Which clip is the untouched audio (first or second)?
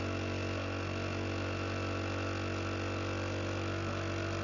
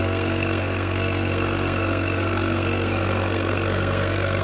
first